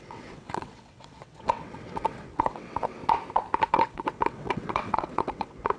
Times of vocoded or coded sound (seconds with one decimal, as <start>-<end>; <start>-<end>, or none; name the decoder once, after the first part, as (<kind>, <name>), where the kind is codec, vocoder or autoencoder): 0.0-3.0 (vocoder, WaveNeXt); 3.7-5.8